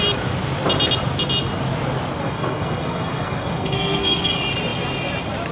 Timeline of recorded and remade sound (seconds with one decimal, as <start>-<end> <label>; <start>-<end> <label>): 0.0-2.2 recorded; 2.2-4.3 remade; 4.3-5.5 recorded